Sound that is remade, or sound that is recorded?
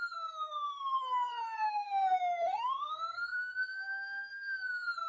remade